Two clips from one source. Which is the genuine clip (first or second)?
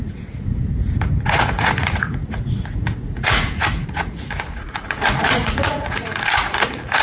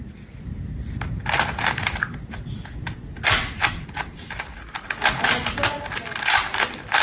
second